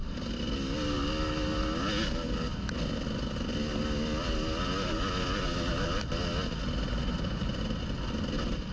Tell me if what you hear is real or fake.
real